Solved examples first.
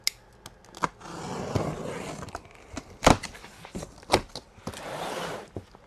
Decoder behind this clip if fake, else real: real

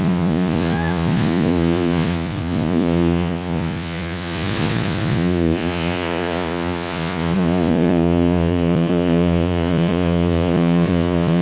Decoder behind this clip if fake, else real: fake, vocoder, Vocos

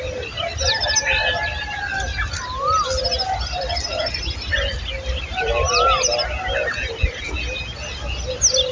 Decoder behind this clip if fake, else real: real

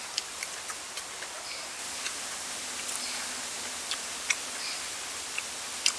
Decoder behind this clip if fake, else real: real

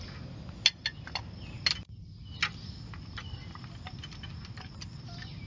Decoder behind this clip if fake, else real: real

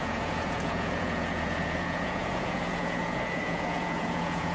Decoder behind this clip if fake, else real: fake, vocoder, Vocos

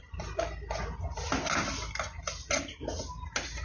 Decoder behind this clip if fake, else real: real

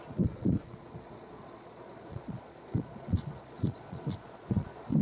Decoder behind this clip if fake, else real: fake, vocoder, Vocos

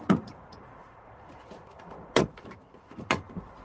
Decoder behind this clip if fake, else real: fake, vocoder, Vocos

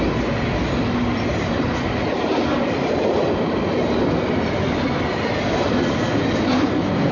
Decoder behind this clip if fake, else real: real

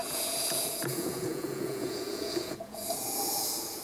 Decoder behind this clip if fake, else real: fake, vocoder, Vocos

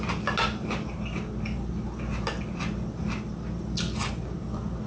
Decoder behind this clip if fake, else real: real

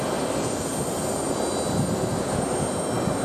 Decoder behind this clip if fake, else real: real